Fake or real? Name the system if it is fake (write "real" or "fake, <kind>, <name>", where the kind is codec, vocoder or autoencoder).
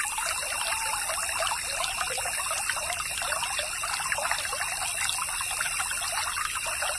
real